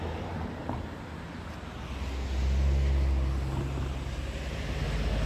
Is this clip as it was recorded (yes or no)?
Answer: yes